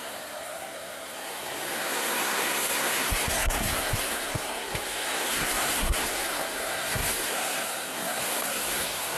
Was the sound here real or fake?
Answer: fake